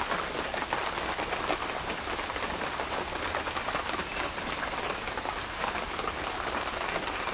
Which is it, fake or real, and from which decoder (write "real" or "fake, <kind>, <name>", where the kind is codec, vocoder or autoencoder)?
real